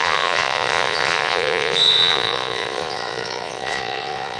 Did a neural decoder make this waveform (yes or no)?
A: yes